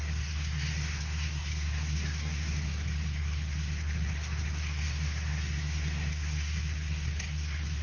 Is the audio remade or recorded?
remade